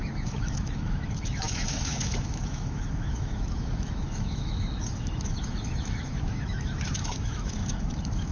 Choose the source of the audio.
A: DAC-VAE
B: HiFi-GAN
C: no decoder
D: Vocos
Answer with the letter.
A